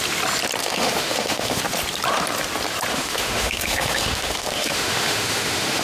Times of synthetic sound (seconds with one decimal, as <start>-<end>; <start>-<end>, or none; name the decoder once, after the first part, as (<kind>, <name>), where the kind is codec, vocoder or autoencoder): 0.6-1.6 (autoencoder, DAC-VAE); 2.9-5.8